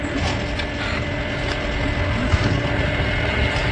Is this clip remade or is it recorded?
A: recorded